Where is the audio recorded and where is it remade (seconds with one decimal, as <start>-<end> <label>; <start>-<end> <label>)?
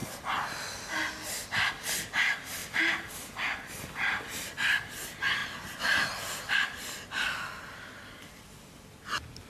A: 0.0-9.5 recorded